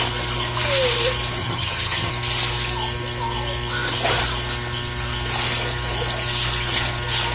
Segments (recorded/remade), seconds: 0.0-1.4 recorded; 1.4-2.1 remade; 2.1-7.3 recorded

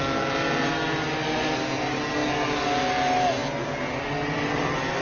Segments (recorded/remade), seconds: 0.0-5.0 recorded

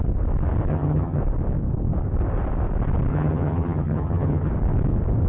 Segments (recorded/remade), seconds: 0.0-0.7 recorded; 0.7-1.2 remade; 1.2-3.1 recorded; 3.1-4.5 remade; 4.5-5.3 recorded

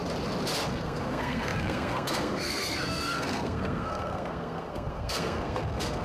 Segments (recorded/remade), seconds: 0.0-0.7 recorded; 0.7-6.0 remade